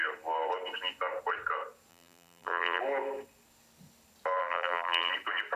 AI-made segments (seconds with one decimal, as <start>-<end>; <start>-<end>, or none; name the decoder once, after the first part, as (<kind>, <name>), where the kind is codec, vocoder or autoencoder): 1.9-2.8 (vocoder, BigVGAN v2); 4.4-5.1